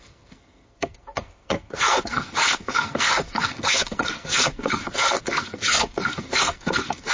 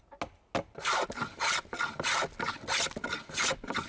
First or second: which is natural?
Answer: second